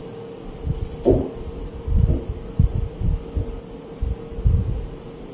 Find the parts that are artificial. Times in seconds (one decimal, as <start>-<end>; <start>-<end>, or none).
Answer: none